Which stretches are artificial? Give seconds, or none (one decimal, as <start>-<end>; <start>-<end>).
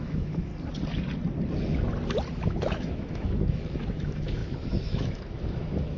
0.0-0.5; 2.3-6.0